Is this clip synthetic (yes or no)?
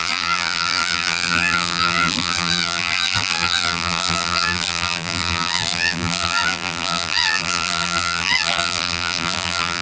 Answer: yes